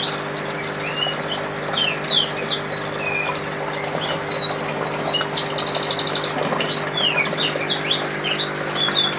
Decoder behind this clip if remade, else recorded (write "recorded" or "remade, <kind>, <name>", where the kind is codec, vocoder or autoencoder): recorded